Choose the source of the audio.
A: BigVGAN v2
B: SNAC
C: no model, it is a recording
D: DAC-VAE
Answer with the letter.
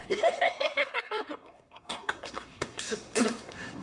B